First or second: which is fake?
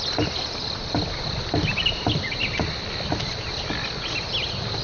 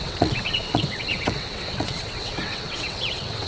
second